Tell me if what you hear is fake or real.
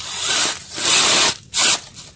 real